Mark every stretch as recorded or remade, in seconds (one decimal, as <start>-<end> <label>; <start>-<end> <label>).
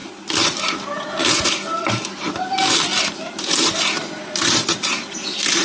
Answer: 0.0-5.6 recorded